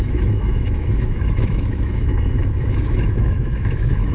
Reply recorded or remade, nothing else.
remade